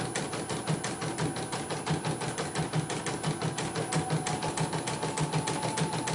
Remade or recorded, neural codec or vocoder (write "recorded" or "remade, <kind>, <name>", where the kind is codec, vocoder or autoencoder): recorded